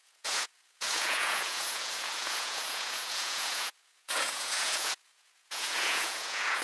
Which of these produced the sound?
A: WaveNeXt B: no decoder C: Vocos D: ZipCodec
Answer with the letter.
C